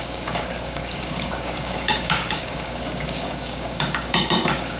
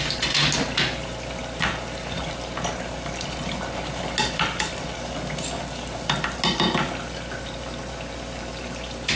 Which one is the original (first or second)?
second